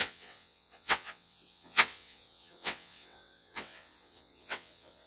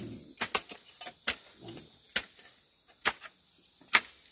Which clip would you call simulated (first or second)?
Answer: first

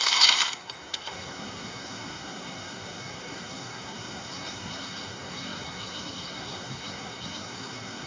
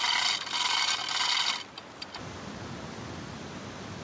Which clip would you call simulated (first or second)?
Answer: first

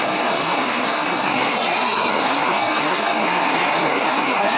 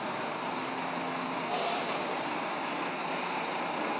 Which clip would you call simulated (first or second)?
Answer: first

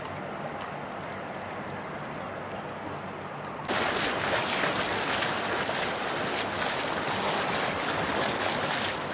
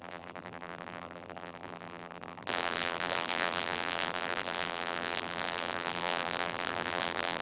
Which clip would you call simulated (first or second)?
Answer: second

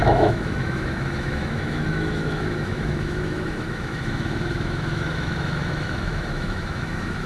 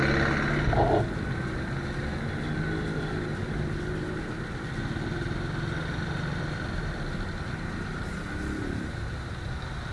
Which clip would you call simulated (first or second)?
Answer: first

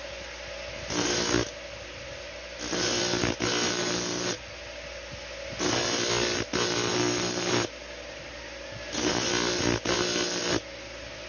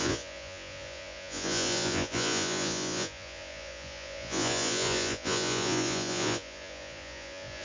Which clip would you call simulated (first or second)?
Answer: second